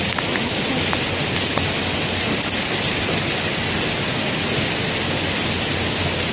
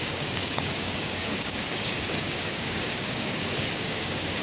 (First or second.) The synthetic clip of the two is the second